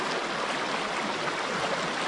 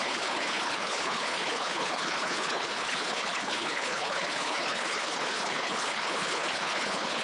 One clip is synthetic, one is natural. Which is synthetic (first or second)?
second